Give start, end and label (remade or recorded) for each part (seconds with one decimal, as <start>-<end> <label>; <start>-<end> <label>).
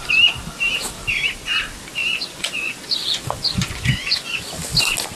0.0-2.0 recorded; 2.0-4.6 remade; 4.6-5.2 recorded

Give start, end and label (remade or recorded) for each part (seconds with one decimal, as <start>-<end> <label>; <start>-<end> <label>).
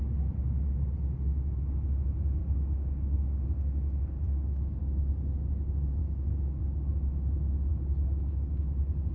0.0-2.4 recorded; 2.4-4.8 remade; 4.8-6.0 recorded; 6.0-6.6 remade; 6.6-9.1 recorded